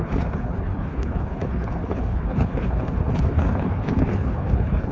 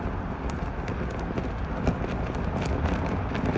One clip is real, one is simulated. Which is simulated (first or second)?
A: first